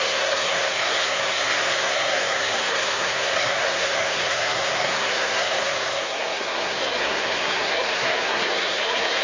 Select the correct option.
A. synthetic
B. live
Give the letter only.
A